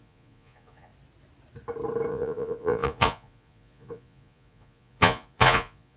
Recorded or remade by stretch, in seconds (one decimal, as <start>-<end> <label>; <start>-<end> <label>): 0.0-0.9 remade; 0.9-2.1 recorded; 2.1-6.0 remade